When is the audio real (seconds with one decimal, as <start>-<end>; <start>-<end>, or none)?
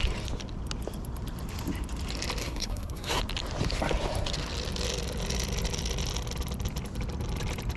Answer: 0.0-2.4; 3.2-7.8